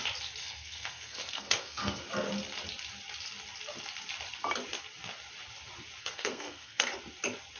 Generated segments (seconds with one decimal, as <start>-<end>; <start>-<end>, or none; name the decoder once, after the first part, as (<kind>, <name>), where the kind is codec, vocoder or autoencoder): 0.4-2.0 (codec, SNAC); 6.0-6.9